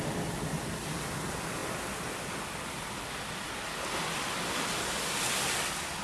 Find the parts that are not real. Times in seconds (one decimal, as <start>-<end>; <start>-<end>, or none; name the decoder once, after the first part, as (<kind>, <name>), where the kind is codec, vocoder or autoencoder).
none